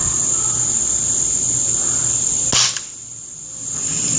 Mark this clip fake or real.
real